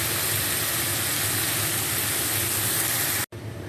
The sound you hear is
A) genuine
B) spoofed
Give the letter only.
A